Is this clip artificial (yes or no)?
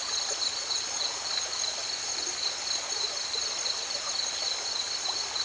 no